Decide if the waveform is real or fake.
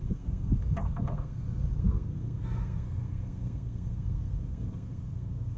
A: fake